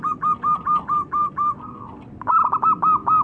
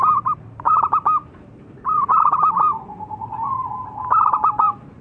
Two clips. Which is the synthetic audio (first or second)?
second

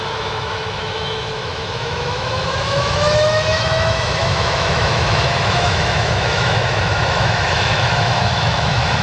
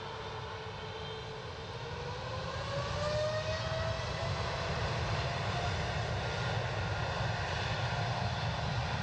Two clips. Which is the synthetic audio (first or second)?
first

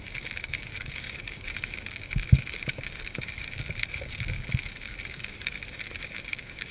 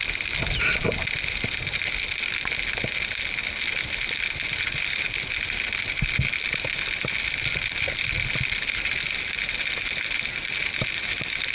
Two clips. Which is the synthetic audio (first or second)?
first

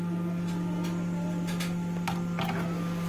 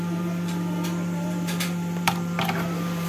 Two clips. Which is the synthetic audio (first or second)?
second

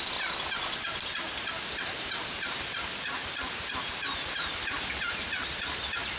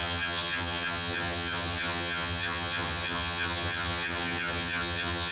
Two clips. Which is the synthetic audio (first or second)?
second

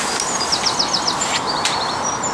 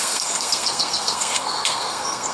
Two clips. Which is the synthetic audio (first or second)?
second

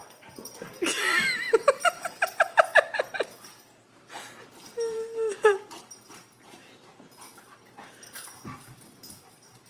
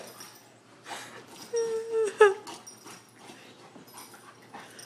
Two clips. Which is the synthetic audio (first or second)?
first